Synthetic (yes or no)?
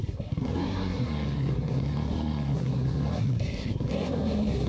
yes